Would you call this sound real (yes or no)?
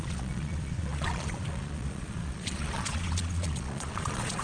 no